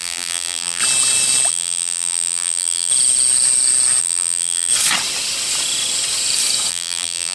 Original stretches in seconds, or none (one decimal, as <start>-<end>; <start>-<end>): 0.8-1.5; 2.9-4.0; 4.7-6.7